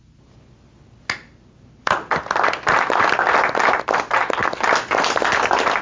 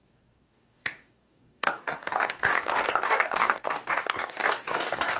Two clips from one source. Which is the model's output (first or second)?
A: second